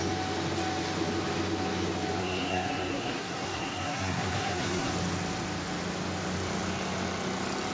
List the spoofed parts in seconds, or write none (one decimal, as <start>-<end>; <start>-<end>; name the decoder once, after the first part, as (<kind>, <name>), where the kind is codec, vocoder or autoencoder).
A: 2.2-4.9 (codec, SNAC)